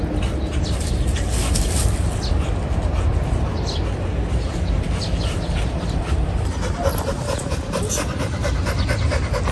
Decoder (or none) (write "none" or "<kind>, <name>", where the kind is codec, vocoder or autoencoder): none